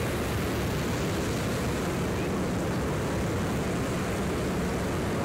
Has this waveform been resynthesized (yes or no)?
no